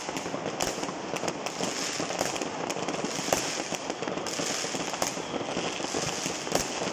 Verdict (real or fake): real